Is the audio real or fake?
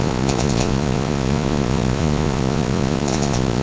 fake